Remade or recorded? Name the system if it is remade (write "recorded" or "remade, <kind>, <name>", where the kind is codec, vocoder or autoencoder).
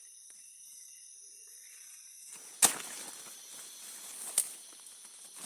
recorded